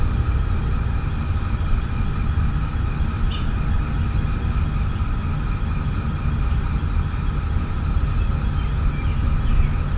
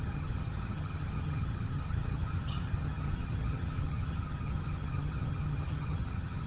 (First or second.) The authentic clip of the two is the first